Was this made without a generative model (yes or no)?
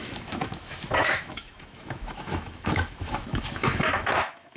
no